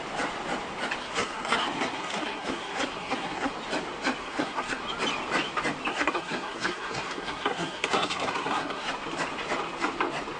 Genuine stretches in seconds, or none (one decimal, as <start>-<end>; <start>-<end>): 0.0-1.0; 3.5-4.2; 4.8-5.9; 8.9-10.4